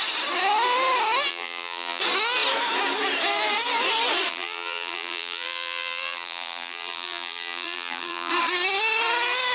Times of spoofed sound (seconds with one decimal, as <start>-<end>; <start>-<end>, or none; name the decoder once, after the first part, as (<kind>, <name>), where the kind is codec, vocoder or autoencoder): 1.3-2.0 (vocoder, BigVGAN v2); 4.3-8.3

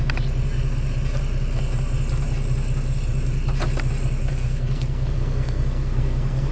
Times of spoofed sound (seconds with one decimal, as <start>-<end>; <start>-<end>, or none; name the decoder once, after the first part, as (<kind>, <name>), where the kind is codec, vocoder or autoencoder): 4.2-6.5 (codec, SNAC)